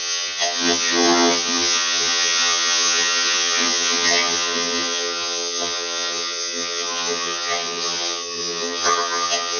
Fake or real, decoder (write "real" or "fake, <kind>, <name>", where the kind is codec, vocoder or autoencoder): fake, vocoder, HiFi-GAN